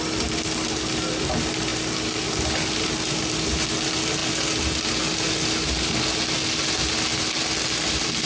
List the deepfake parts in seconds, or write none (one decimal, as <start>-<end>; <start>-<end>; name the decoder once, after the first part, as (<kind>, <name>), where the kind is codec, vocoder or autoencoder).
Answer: none